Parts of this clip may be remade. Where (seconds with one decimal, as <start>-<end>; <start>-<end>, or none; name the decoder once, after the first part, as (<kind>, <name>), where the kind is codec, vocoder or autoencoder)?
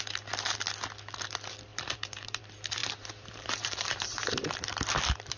1.7-2.4 (vocoder, BigVGAN v2); 2.8-4.5